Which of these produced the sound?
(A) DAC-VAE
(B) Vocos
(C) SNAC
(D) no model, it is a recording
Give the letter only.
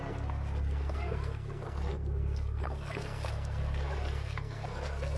C